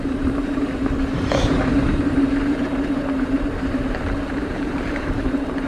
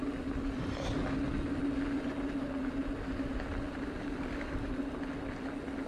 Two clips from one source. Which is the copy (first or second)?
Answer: first